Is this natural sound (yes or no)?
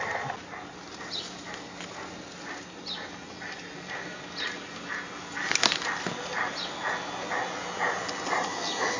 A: yes